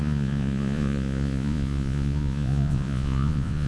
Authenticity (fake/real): fake